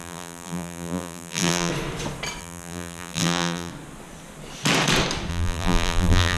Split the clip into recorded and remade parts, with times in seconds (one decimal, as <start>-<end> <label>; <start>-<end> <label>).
0.0-1.7 remade; 1.7-2.4 recorded; 2.4-3.7 remade; 3.7-5.3 recorded; 5.3-6.4 remade